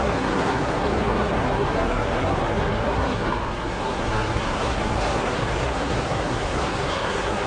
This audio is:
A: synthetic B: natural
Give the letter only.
A